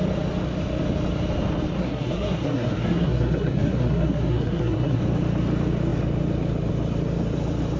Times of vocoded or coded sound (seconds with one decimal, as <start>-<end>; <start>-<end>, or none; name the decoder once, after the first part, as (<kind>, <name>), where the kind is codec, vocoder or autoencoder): 1.8-5.0 (codec, SNAC)